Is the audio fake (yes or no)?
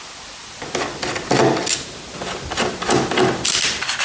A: no